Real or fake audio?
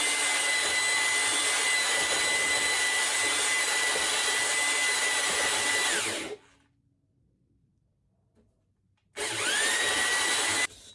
real